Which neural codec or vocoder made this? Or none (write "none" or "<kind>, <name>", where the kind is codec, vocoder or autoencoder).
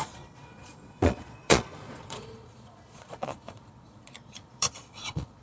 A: vocoder, Vocos